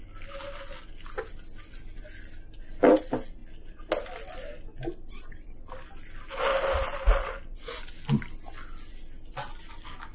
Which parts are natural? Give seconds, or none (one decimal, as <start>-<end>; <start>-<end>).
0.0-6.5; 7.8-10.1